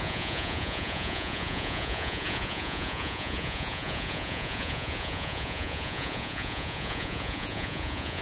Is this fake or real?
fake